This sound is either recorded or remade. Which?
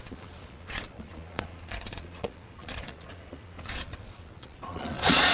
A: remade